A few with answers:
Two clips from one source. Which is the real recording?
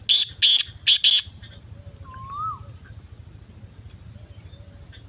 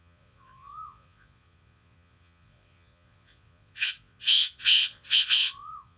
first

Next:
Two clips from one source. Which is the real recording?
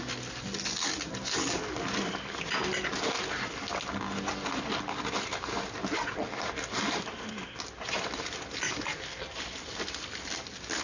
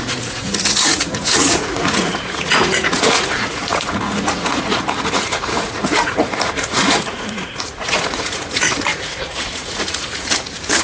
first